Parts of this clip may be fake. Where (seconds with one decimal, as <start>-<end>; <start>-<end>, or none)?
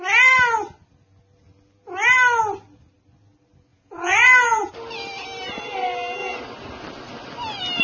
3.7-4.7